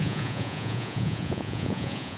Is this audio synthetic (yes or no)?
yes